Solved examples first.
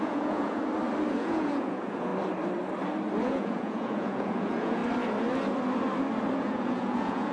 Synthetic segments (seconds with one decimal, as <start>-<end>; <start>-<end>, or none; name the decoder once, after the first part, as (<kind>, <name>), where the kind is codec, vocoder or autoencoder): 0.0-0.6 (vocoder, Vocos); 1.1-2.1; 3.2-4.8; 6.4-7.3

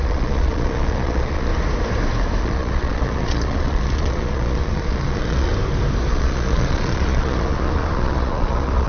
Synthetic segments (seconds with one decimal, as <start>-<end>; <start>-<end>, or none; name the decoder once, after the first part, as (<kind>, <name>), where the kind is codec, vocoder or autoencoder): 0.0-1.5 (vocoder, Vocos); 2.4-5.5; 6.1-8.9

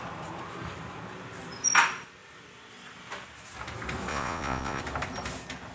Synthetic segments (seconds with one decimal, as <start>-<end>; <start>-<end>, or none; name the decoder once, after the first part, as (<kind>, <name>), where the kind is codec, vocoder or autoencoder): 4.1-4.8 (vocoder, Vocos)

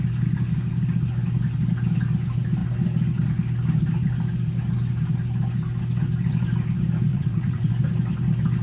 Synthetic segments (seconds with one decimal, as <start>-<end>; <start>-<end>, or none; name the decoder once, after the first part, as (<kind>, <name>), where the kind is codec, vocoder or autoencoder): 7.1-7.7 (vocoder, Vocos)

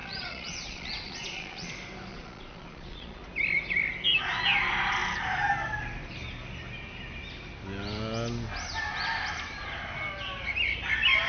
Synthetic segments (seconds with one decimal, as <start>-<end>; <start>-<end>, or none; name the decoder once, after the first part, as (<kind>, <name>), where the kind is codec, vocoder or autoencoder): 0.0-1.7 (vocoder, Vocos); 2.1-3.2